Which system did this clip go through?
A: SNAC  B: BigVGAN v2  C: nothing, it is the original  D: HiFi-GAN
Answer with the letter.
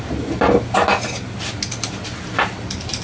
C